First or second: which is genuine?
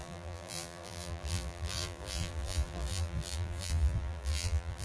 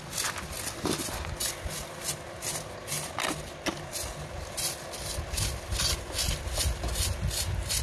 second